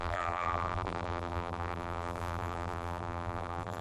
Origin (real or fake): fake